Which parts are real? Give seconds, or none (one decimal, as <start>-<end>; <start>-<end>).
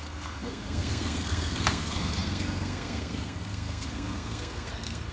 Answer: none